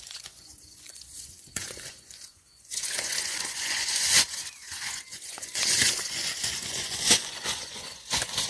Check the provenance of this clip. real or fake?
fake